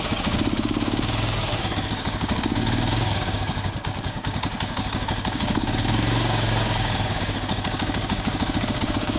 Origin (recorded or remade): remade